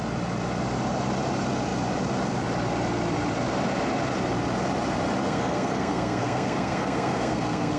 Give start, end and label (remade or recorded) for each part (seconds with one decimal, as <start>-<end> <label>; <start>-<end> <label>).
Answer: 0.0-5.2 recorded; 5.2-7.8 remade